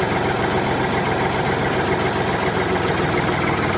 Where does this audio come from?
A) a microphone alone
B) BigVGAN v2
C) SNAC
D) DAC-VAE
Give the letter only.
A